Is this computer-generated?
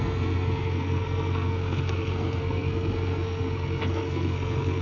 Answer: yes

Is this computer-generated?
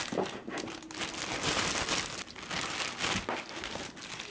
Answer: no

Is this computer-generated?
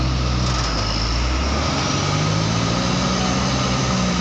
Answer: no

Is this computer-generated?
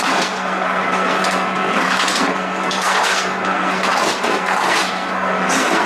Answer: yes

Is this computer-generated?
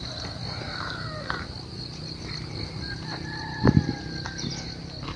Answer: no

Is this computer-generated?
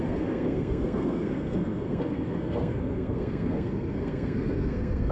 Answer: yes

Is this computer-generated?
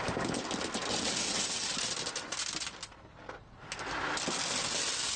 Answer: no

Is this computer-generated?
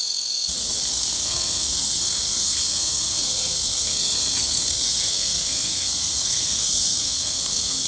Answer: yes